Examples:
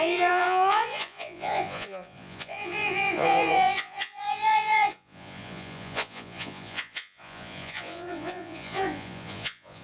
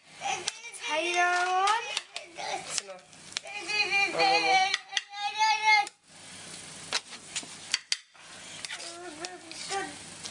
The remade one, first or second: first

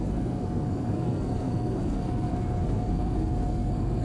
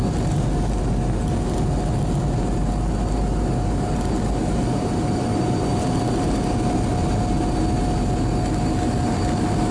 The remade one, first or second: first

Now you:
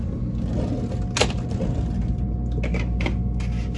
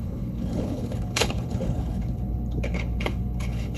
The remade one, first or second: second